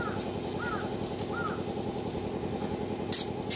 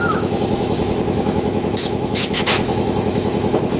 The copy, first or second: second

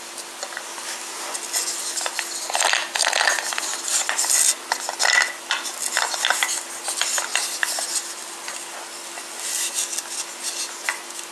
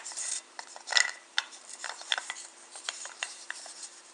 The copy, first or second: second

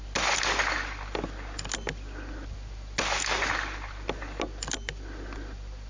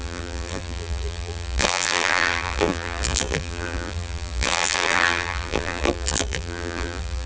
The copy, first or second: second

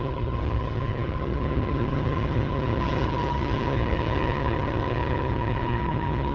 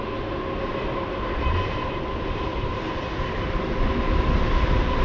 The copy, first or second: first